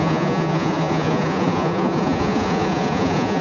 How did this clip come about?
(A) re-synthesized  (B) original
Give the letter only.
A